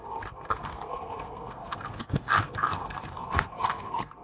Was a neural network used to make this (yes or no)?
yes